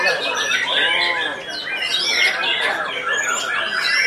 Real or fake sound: real